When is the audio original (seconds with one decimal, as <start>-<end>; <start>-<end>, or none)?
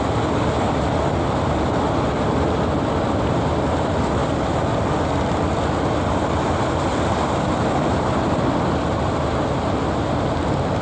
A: 0.0-10.8